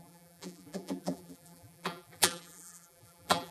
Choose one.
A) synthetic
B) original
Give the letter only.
A